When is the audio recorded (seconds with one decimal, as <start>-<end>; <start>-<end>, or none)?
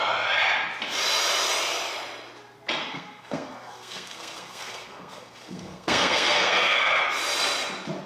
0.0-2.8; 7.0-8.1